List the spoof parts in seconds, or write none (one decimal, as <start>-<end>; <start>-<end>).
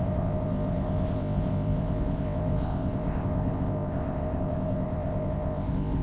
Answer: 0.0-6.0